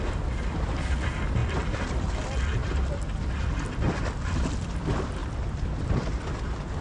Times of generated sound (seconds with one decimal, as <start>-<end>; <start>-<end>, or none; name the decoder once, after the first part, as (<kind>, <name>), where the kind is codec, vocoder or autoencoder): 1.4-2.1 (vocoder, BigVGAN v2); 5.2-6.8